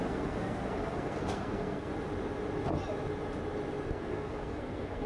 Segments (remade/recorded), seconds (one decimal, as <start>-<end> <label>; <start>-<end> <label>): 0.0-1.9 remade; 1.9-3.9 recorded; 3.9-5.1 remade